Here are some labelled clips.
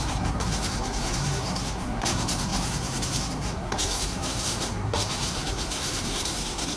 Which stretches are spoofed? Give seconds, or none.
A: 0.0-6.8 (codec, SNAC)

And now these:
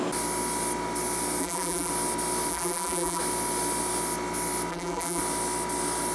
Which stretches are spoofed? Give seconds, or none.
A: 1.4-1.9 (vocoder, BigVGAN v2); 2.5-3.2; 4.7-5.2